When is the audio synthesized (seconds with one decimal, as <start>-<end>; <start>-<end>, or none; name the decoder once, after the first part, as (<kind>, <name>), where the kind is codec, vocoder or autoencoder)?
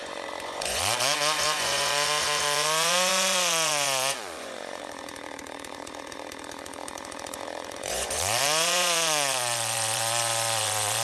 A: 0.0-11.0 (vocoder, Vocos)